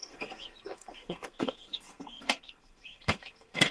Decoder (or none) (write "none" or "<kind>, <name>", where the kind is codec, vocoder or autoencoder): codec, SNAC